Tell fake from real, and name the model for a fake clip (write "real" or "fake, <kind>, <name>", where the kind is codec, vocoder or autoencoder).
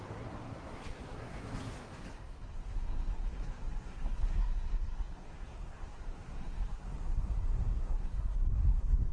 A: fake, codec, SNAC